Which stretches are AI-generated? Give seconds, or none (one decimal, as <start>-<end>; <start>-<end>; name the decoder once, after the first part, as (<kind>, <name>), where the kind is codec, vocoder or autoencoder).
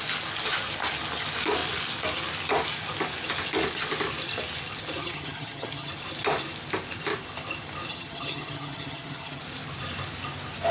5.0-5.9 (vocoder, HiFi-GAN); 7.9-9.4